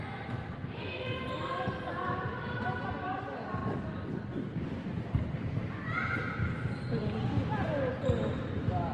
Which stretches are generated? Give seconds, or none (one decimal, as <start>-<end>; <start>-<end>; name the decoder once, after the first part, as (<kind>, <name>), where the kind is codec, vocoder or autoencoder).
none